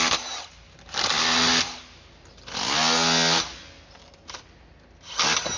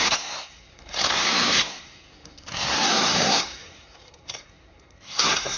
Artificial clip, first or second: second